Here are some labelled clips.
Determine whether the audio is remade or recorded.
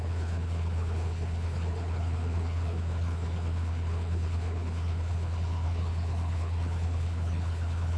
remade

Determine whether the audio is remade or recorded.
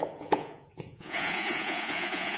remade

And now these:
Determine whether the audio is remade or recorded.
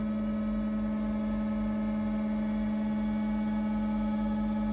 recorded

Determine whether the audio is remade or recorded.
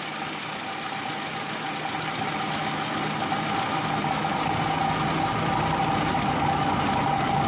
recorded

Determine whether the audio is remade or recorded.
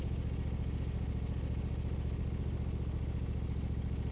recorded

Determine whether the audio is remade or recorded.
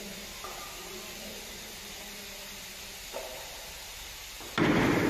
recorded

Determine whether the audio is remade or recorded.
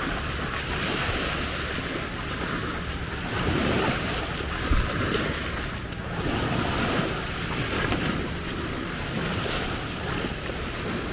recorded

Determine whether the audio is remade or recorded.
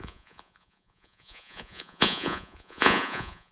remade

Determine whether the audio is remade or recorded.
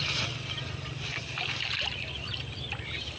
recorded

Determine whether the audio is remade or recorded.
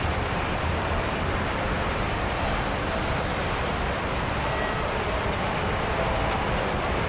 remade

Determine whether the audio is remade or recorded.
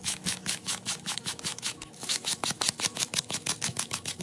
remade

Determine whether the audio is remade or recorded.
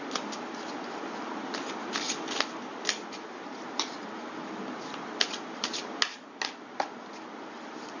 recorded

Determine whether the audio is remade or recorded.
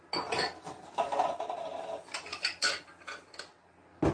recorded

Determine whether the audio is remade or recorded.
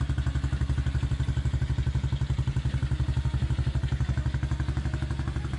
recorded